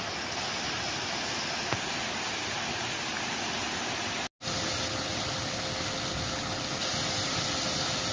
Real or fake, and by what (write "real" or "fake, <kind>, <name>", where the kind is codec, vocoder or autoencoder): real